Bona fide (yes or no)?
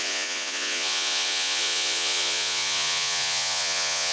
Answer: no